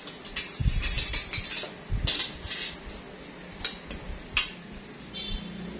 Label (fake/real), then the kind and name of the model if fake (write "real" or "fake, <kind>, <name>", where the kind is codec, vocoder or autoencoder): real